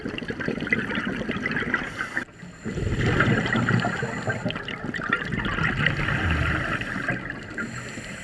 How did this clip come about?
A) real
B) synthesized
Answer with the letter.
A